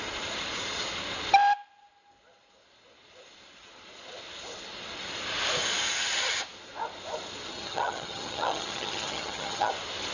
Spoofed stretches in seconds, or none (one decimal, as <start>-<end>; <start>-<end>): 7.5-9.7